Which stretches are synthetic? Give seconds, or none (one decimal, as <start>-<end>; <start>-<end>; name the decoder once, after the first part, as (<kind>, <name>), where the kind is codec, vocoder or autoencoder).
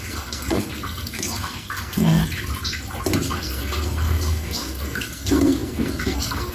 0.0-2.2 (codec, SNAC); 3.2-6.5